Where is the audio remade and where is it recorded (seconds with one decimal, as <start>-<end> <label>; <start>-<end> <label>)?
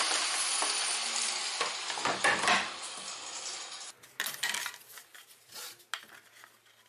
0.0-5.1 recorded; 5.1-5.8 remade; 5.8-6.9 recorded